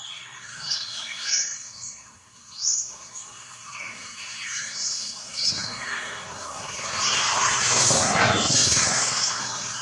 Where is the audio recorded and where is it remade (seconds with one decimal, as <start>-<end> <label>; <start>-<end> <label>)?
0.0-9.8 remade